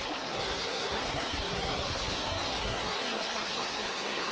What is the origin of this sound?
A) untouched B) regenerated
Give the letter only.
B